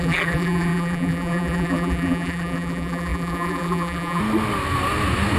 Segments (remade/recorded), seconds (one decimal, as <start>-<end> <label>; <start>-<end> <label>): 0.0-4.2 remade; 4.2-5.4 recorded